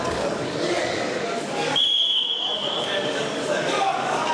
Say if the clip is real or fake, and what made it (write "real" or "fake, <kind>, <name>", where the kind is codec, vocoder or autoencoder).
fake, codec, DAC